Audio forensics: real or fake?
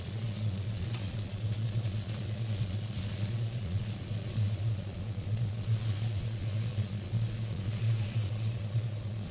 fake